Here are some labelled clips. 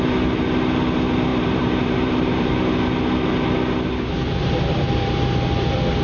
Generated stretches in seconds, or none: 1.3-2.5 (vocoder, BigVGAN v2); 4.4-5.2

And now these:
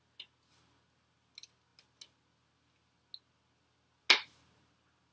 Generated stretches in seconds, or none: none

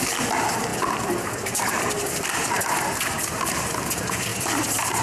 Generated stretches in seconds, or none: 0.7-3.4 (vocoder, BigVGAN v2); 4.3-5.0